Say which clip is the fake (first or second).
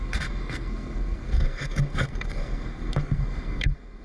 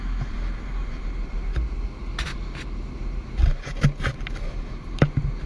first